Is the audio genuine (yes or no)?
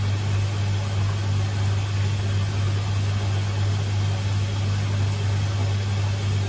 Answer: yes